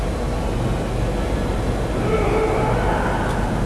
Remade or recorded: recorded